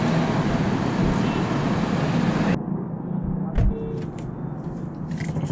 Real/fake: real